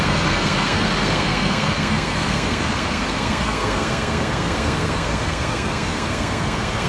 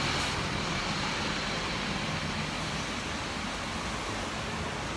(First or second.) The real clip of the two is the second